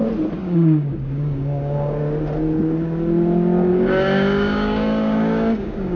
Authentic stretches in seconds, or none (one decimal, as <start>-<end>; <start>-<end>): 0.0-0.4; 2.0-3.7